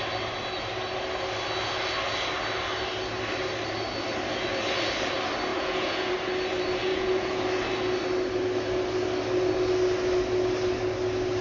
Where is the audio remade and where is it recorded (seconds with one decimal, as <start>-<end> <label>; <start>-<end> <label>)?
0.0-5.5 recorded; 5.5-6.1 remade; 6.1-6.9 recorded; 6.9-7.4 remade; 7.4-11.4 recorded